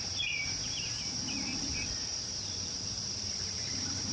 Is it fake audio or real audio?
fake